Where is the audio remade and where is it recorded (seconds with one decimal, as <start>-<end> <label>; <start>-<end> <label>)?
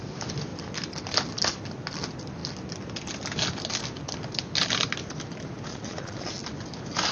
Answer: 0.0-5.7 recorded; 5.7-6.3 remade; 6.3-7.1 recorded